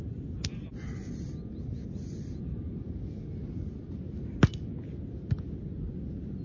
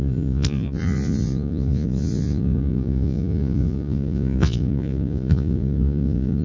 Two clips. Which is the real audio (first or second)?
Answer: first